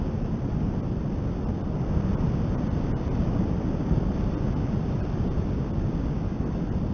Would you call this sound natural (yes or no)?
yes